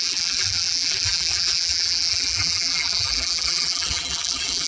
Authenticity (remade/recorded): remade